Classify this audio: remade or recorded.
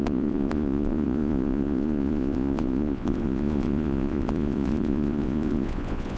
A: remade